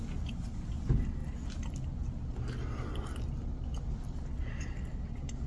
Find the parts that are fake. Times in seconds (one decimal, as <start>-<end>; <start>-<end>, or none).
none